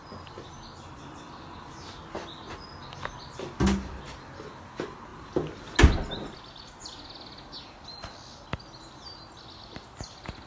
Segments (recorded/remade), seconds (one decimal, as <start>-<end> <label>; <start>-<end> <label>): 0.0-10.5 recorded